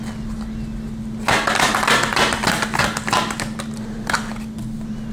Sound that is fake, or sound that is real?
real